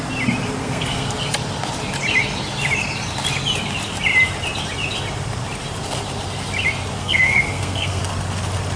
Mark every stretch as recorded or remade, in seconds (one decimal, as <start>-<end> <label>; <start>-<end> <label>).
0.0-0.6 recorded; 0.6-1.1 remade; 1.1-7.0 recorded; 7.0-8.0 remade; 8.0-8.8 recorded